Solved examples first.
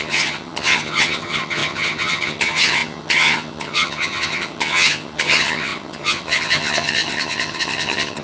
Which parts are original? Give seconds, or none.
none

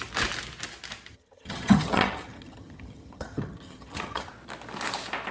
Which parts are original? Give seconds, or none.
0.0-1.1; 4.3-5.3

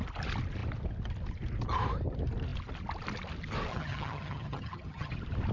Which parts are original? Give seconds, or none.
0.0-3.7; 5.1-5.5

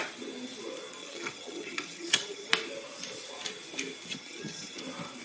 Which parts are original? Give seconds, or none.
0.0-1.0; 2.5-4.1; 4.8-5.2

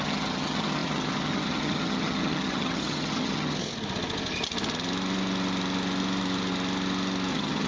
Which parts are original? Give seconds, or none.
3.7-7.3